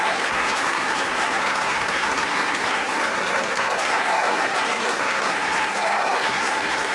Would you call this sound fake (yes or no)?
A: yes